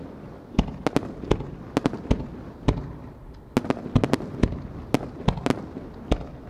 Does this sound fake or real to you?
real